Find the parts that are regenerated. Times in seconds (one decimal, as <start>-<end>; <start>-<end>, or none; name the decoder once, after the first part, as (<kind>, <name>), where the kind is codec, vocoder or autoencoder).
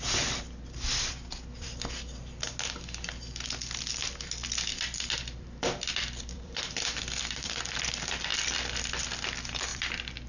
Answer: 4.7-7.5 (vocoder, BigVGAN v2); 9.7-10.3